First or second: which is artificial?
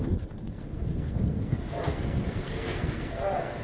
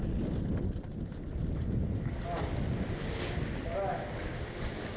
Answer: first